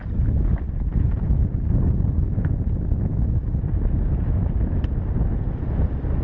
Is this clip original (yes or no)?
yes